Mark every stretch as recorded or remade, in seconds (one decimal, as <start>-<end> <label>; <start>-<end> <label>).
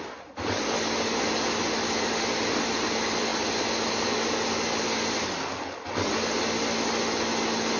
0.0-7.8 recorded